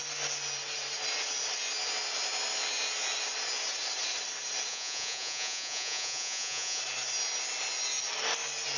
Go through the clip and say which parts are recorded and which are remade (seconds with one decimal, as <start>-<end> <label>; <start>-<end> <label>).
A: 0.0-4.7 recorded; 4.7-6.8 remade; 6.8-8.8 recorded